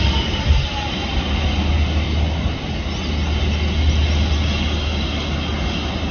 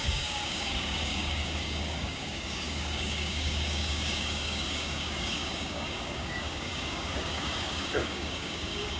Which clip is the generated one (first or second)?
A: second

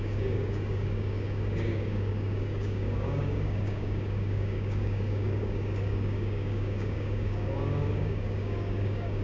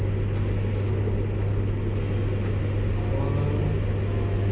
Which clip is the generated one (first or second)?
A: first